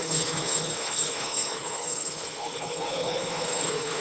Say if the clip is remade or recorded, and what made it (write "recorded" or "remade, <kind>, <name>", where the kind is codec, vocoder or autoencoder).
remade, codec, HILCodec